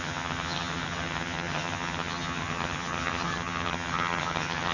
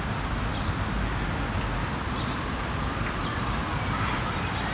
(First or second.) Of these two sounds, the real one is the second